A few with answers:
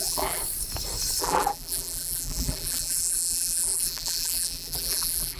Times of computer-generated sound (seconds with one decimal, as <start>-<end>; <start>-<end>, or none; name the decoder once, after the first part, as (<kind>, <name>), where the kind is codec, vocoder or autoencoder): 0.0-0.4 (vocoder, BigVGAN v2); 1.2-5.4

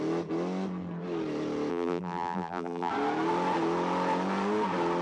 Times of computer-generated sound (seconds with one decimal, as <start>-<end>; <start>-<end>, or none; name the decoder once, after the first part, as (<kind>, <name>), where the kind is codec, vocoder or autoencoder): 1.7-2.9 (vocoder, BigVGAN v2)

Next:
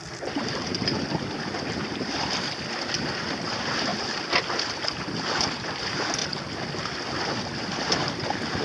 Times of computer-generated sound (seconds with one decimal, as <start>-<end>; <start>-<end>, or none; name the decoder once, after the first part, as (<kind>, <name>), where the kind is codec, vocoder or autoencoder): none